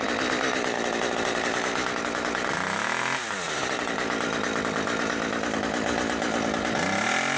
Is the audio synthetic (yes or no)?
no